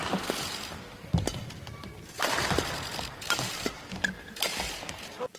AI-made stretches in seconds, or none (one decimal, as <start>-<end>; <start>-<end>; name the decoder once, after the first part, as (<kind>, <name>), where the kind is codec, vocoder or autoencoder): none

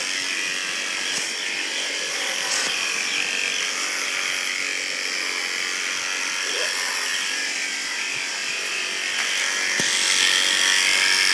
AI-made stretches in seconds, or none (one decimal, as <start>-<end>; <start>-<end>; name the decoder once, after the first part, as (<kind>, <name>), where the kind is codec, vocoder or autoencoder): 0.6-4.1 (vocoder, BigVGAN v2); 7.1-8.0

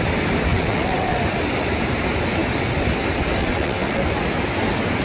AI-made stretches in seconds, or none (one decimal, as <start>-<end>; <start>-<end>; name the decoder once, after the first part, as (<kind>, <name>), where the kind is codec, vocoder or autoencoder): 0.5-1.2 (vocoder, WaveNeXt); 3.4-4.0

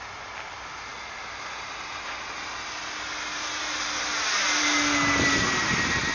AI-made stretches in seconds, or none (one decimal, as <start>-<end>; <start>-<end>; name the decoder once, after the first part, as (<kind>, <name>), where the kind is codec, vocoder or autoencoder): none

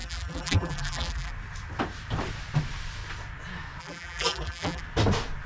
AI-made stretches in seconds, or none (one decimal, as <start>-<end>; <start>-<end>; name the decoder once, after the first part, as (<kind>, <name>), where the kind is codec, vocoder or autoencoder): 0.0-1.3 (vocoder, BigVGAN v2); 3.8-4.8

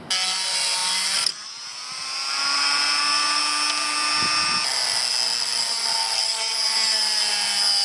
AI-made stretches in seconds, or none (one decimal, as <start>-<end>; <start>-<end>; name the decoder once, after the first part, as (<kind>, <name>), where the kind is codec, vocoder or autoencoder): 0.8-3.4 (vocoder, BigVGAN v2); 5.5-7.2

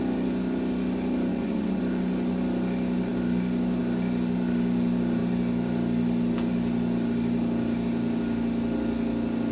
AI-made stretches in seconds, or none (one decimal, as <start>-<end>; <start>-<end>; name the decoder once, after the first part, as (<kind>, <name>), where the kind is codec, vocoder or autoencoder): 1.3-1.8 (vocoder, WaveNeXt)